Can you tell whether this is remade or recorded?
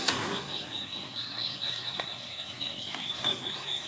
remade